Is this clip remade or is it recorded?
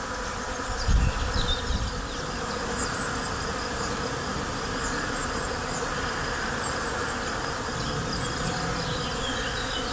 recorded